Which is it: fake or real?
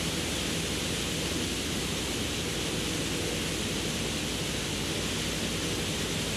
real